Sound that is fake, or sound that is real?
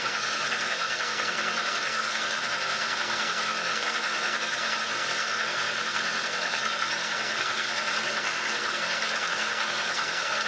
fake